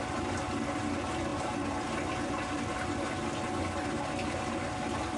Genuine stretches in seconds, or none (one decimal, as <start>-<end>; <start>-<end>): 0.0-5.2